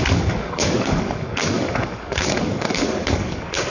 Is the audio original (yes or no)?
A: no